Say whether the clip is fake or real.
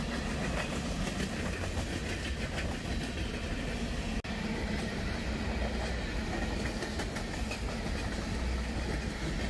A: real